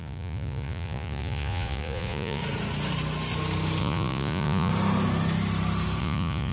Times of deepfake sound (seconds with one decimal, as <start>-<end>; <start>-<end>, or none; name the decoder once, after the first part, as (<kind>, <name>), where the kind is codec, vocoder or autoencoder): 0.0-2.4 (vocoder, Vocos); 3.8-4.7; 6.0-6.5